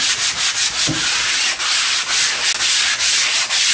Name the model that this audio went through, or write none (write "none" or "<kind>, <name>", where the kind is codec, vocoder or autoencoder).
none